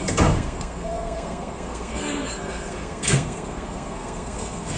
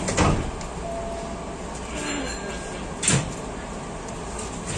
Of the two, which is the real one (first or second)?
second